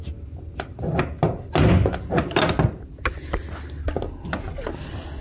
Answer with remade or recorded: recorded